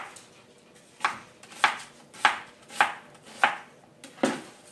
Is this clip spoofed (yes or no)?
no